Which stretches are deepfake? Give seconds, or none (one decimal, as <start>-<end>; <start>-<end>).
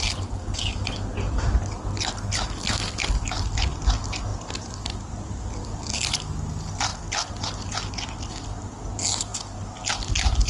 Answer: none